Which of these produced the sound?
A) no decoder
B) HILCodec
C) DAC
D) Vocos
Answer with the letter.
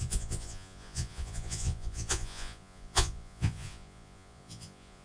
D